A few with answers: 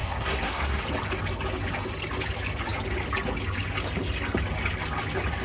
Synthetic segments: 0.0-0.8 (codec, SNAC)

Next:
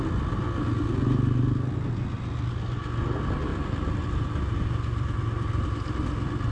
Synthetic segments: 3.5-4.6 (vocoder, BigVGAN v2)

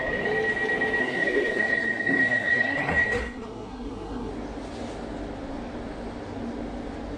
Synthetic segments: 1.0-4.3 (codec, SNAC)

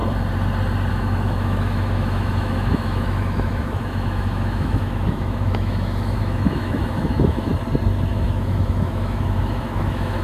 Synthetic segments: 0.9-7.5 (autoencoder, DAC-VAE); 8.1-10.2

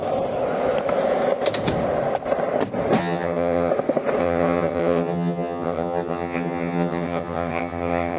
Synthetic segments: 3.0-3.7 (vocoder, HiFi-GAN); 4.2-8.2

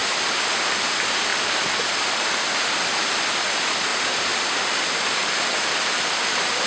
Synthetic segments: 0.0-1.3 (vocoder, BigVGAN v2); 3.2-3.9; 4.8-5.2